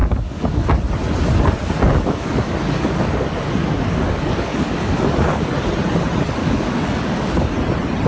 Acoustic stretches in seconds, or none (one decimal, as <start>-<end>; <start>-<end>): 0.8-1.9; 5.5-6.4; 7.5-8.1